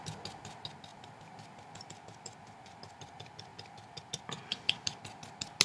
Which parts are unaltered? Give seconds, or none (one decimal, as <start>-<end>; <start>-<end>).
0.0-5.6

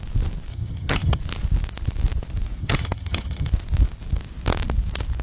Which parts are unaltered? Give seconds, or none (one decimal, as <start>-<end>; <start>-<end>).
0.0-0.5; 1.2-2.6; 3.5-5.2

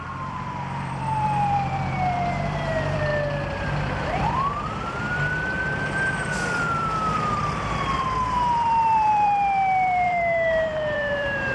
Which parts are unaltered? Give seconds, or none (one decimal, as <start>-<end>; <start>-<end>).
3.1-3.6

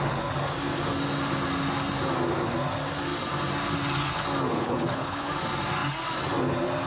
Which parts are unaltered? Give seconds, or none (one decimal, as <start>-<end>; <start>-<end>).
0.0-4.5; 5.3-6.9